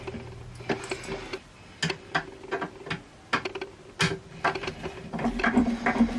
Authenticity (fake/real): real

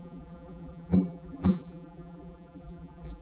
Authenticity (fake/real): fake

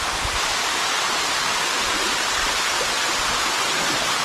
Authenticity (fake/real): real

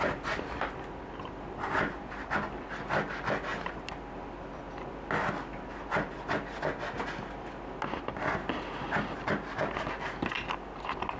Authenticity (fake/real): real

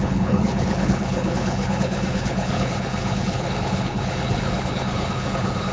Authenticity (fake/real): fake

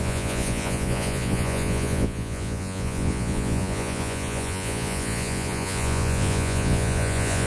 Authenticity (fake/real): fake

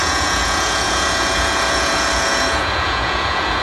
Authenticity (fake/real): fake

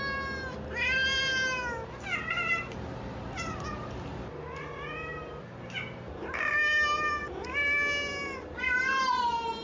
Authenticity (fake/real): real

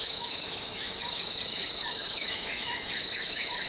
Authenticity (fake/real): fake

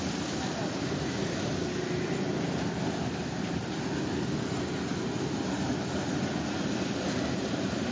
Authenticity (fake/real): real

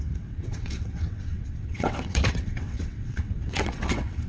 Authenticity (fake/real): fake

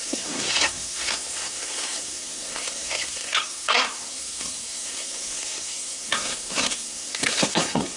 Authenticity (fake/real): fake